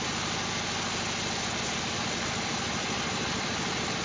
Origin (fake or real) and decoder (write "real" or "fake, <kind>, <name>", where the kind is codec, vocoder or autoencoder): real